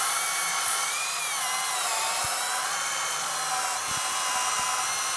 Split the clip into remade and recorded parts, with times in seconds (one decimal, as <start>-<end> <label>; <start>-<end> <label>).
0.0-0.5 recorded; 0.5-1.2 remade; 1.2-2.6 recorded; 2.6-3.3 remade; 3.3-5.2 recorded